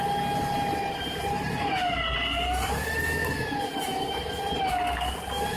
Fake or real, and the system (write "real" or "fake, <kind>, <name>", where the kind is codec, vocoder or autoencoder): real